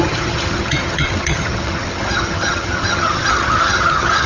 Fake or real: fake